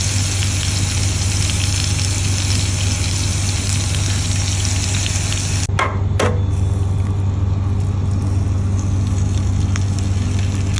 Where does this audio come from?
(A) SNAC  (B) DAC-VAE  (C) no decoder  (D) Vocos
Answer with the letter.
C